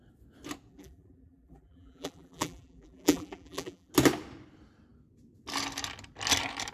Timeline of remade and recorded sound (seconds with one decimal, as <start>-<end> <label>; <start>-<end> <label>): 0.0-0.7 recorded; 0.7-3.9 remade; 3.9-6.7 recorded